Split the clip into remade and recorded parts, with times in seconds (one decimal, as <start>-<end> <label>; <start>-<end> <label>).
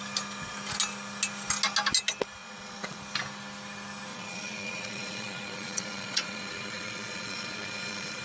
0.0-2.4 recorded; 2.4-3.0 remade; 3.0-4.1 recorded; 4.1-8.2 remade